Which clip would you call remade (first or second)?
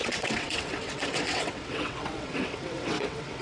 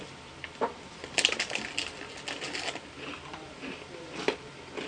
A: first